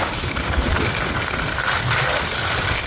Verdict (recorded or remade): recorded